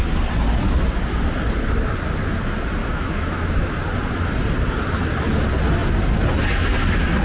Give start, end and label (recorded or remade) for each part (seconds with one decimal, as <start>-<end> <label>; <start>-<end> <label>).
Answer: 0.0-2.8 recorded; 2.8-3.7 remade; 3.7-7.2 recorded